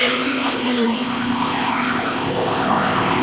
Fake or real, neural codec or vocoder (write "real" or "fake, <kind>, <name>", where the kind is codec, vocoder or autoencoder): fake, codec, ZipCodec